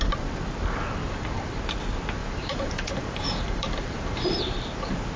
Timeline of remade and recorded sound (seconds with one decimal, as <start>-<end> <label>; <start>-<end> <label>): 0.0-1.0 recorded; 1.0-1.6 remade; 1.6-2.2 recorded; 2.2-4.3 remade; 4.3-5.2 recorded